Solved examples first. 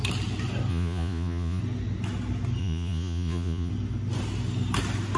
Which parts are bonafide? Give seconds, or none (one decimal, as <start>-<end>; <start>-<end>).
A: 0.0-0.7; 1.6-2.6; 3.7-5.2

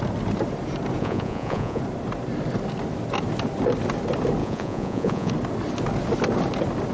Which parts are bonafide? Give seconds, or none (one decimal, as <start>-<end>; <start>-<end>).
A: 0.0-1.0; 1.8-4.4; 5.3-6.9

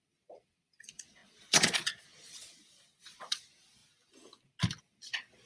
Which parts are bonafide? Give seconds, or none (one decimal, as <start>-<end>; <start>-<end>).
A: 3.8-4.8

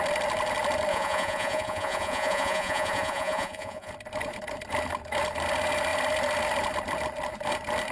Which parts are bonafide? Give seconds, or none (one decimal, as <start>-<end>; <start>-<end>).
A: 0.0-0.9; 3.9-7.9

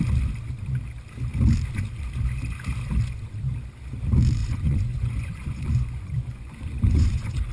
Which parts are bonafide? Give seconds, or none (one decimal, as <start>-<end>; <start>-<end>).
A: 0.0-4.4